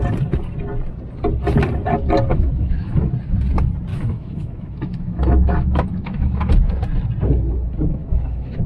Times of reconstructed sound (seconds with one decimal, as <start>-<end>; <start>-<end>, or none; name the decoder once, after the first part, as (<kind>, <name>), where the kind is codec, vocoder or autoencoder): 2.3-3.1 (autoencoder, DAC-VAE); 3.9-6.5; 8.0-8.7

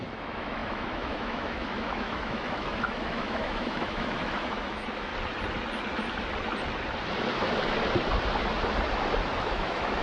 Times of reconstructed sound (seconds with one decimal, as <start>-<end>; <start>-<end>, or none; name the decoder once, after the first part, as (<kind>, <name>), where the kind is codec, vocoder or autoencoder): 0.0-5.1 (autoencoder, DAC-VAE); 9.4-10.0

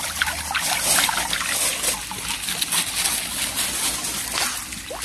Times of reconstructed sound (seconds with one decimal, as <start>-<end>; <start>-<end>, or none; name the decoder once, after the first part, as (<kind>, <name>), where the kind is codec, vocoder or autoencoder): none

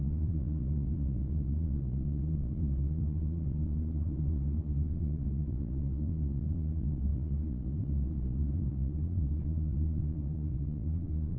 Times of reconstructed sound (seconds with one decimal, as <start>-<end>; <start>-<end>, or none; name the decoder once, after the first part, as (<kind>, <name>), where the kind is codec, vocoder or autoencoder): 0.0-11.4 (vocoder, Vocos)

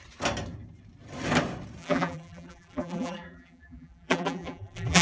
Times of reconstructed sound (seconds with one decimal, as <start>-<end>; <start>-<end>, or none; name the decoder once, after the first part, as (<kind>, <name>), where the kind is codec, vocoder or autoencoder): 1.8-5.0 (vocoder, BigVGAN v2)

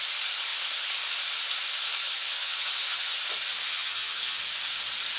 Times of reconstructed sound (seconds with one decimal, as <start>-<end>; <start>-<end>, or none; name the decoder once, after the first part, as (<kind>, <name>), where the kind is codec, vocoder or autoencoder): 2.0-3.1 (vocoder, HiFi-GAN); 3.6-4.4

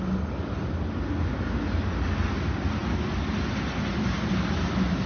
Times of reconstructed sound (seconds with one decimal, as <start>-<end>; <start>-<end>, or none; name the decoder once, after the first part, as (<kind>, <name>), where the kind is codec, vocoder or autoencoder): none